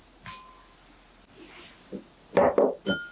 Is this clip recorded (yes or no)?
yes